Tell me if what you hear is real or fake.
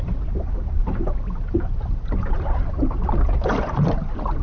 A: real